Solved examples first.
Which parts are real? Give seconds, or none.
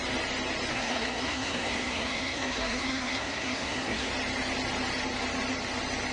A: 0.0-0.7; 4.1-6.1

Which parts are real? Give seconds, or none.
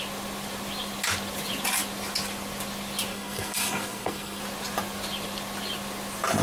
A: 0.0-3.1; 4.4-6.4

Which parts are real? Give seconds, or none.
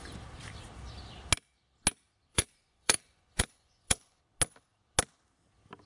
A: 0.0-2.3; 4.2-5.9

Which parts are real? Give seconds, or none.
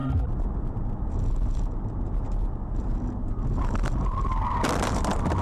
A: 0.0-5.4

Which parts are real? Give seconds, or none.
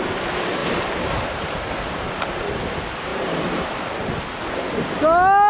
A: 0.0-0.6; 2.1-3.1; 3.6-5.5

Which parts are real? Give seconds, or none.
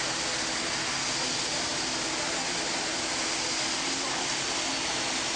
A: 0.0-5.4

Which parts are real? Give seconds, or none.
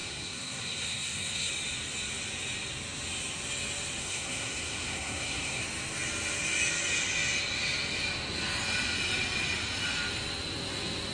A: 1.5-4.0; 5.6-11.1